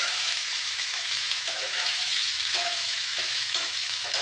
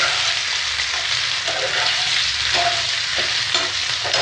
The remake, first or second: first